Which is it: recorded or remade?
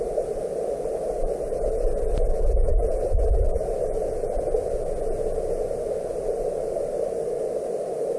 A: recorded